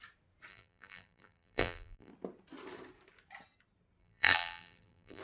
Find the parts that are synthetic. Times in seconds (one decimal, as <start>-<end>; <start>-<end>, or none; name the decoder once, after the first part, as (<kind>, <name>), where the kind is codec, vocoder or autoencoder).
0.5-2.1 (vocoder, BigVGAN v2); 4.0-5.2

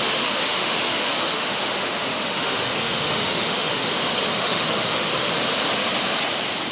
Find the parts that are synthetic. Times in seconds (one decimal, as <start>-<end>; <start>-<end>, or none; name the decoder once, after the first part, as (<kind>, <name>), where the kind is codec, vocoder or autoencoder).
0.0-3.9 (autoencoder, DAC-VAE); 4.3-5.3

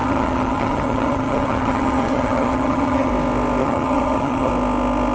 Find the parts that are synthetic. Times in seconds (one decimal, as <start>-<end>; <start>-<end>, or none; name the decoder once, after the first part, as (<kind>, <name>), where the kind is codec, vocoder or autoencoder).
0.0-3.1 (vocoder, HiFi-GAN); 3.6-4.5

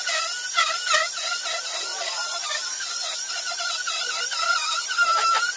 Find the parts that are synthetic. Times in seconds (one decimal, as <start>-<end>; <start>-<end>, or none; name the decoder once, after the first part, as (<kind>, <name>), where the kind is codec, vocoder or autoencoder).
none

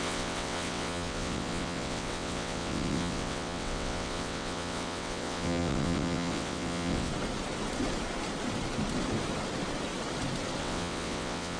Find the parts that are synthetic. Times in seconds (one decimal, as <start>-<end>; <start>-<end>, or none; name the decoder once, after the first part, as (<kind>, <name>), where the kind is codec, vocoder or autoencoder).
0.0-7.1 (vocoder, WaveNeXt); 10.6-11.6

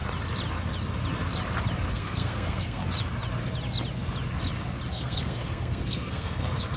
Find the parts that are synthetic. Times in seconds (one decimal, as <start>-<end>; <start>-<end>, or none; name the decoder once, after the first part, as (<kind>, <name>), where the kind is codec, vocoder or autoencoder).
1.9-2.8 (codec, SNAC); 4.9-6.8

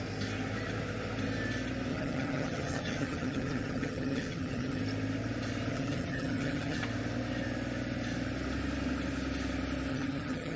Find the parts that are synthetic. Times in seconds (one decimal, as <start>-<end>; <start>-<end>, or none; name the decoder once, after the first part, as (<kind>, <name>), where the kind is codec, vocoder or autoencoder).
1.9-4.8 (vocoder, HiFi-GAN); 5.7-6.8; 9.9-10.6

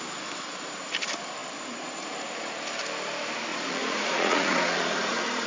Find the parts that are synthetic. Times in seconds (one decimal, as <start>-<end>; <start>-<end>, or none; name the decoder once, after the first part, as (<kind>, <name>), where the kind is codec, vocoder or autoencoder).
3.5-5.5 (vocoder, Vocos)